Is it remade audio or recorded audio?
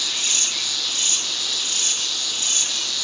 recorded